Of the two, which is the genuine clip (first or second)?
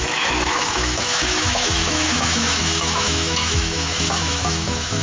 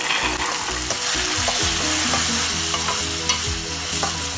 second